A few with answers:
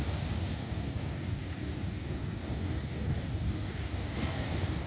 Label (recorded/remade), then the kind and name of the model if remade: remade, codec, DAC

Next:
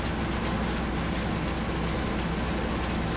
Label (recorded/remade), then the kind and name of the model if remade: recorded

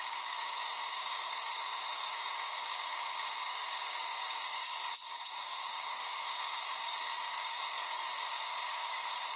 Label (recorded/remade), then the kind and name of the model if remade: remade, codec, DAC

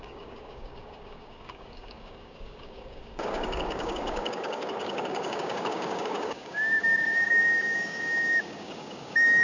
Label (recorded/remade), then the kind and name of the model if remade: remade, codec, DAC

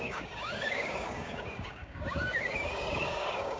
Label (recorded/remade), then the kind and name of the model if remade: remade, codec, DAC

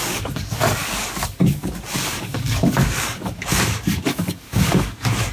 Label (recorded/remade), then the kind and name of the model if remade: remade, codec, DAC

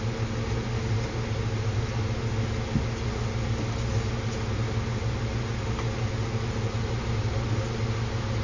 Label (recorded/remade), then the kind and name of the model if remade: recorded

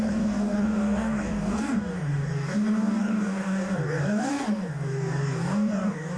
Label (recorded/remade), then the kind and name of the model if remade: remade, codec, DAC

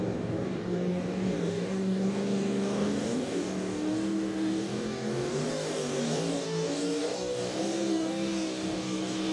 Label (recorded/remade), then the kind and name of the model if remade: remade, codec, DAC